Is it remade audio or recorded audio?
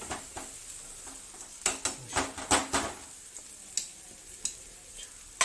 recorded